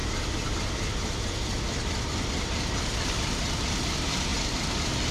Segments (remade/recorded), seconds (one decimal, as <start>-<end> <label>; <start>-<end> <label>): 0.0-2.2 remade; 2.2-4.3 recorded; 4.3-5.1 remade